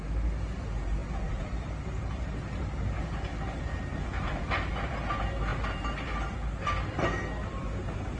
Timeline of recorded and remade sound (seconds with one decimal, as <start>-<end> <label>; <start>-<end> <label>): 0.0-8.2 recorded